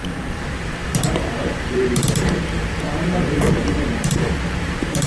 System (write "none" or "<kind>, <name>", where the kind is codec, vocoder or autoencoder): vocoder, BigVGAN v2